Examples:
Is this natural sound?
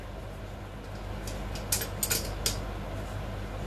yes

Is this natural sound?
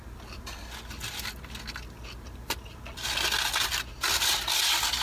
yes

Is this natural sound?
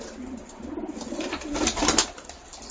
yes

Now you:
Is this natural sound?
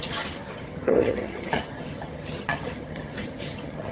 no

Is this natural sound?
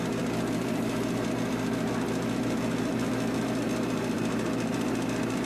no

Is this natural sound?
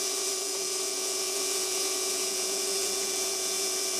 no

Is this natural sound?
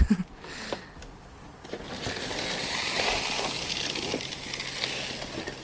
yes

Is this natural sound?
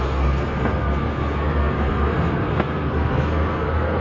no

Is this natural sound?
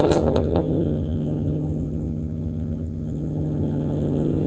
no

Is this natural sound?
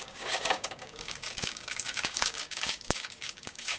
no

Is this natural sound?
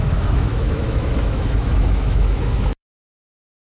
no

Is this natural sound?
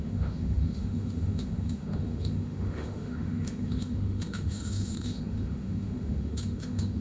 no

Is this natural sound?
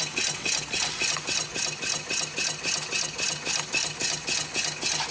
yes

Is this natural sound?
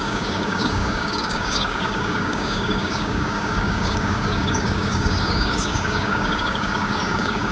no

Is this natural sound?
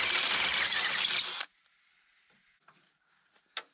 yes